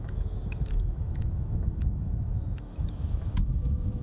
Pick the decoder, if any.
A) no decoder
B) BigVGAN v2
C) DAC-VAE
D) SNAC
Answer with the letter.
C